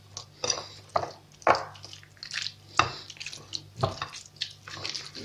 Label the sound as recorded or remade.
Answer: recorded